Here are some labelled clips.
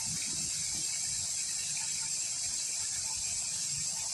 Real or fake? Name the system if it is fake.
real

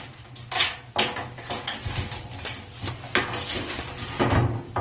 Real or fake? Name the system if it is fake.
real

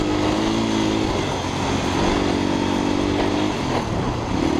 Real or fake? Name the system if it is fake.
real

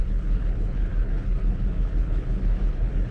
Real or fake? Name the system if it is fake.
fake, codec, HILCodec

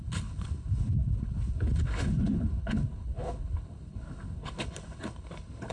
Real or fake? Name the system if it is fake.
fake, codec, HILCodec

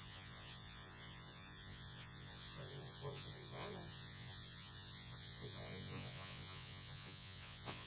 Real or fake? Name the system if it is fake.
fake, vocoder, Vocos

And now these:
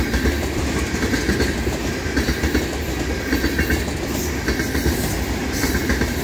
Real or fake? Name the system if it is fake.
real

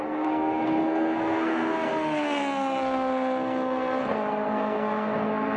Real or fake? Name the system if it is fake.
fake, codec, SNAC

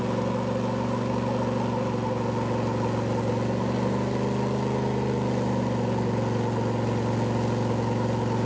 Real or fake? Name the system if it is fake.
real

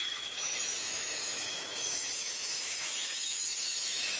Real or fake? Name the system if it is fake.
fake, autoencoder, DAC-VAE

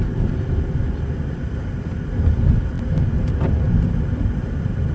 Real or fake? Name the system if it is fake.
real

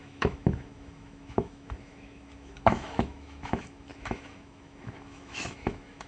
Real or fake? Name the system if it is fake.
fake, autoencoder, DAC-VAE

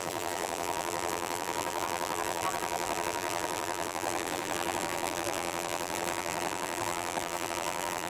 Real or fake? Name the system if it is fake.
fake, vocoder, BigVGAN v2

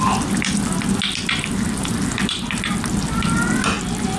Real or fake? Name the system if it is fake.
real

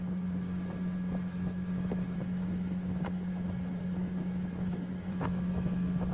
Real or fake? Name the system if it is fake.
fake, autoencoder, DAC-VAE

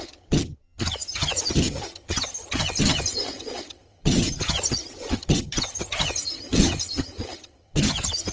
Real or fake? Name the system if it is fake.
fake, vocoder, HiFi-GAN